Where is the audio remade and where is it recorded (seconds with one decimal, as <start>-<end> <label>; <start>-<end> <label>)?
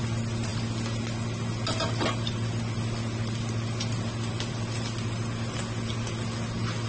0.0-6.9 recorded